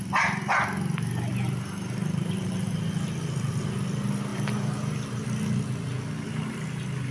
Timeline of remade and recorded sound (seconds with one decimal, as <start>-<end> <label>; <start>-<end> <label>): 0.0-1.3 recorded; 1.3-2.5 remade; 2.5-4.3 recorded; 4.3-5.2 remade; 5.2-7.1 recorded